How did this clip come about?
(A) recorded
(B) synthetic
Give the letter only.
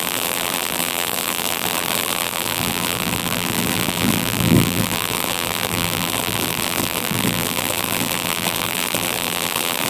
B